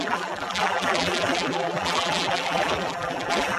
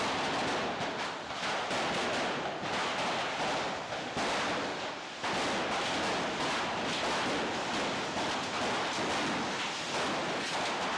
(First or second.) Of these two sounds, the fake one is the first